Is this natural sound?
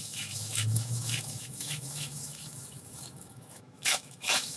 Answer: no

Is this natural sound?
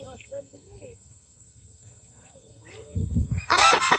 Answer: no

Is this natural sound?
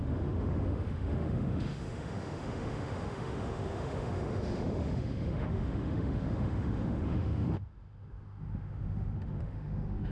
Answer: no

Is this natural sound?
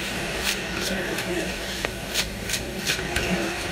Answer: no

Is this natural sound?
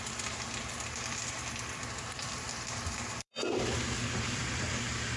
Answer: no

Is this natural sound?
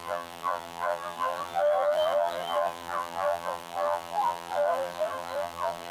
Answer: no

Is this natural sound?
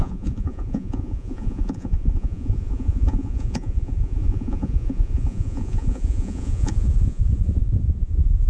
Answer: no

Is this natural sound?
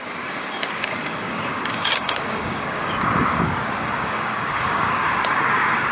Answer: no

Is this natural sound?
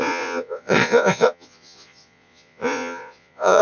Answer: no